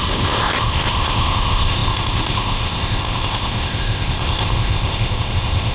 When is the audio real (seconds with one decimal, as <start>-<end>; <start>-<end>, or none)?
none

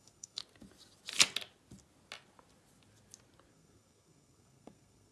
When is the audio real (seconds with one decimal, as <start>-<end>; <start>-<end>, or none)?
0.4-3.5

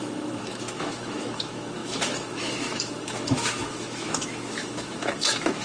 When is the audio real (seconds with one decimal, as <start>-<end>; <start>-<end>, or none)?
none

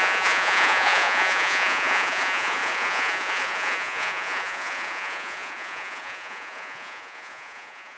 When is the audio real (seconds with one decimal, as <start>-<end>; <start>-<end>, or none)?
none

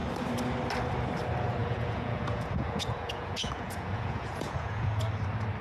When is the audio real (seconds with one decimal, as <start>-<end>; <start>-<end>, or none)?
0.0-1.6; 5.0-5.6

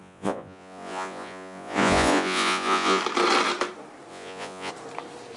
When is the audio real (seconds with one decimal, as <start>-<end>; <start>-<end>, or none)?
3.0-4.1; 4.7-5.4